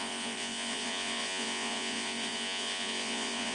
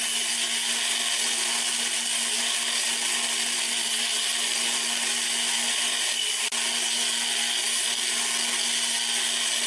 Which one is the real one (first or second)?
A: second